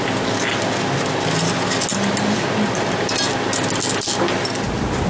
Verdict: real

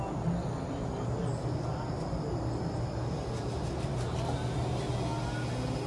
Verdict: real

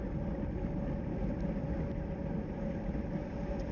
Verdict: real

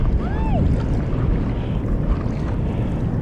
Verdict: real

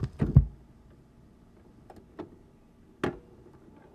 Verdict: real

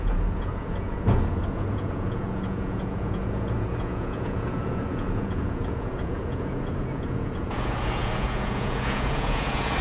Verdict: fake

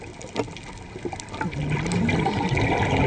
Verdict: real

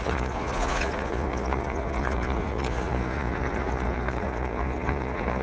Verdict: fake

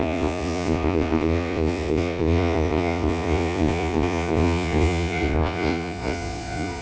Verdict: fake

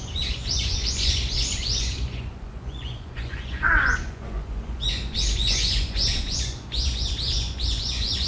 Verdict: fake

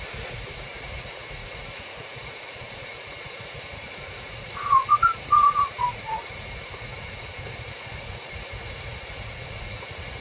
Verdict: fake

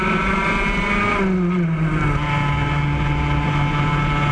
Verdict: real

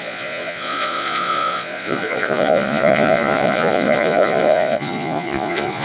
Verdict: fake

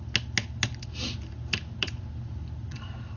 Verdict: real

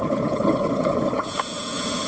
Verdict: fake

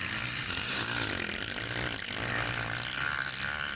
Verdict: real